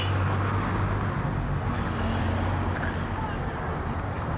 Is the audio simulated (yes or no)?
no